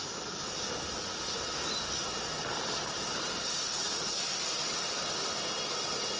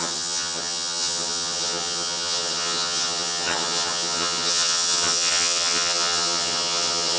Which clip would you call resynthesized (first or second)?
second